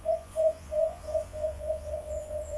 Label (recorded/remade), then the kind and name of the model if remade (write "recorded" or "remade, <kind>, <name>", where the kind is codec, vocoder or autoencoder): remade, vocoder, Vocos